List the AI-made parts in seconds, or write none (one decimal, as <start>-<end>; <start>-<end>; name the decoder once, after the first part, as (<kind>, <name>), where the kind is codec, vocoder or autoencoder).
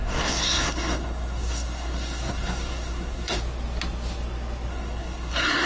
0.0-3.4 (codec, SNAC); 4.7-5.7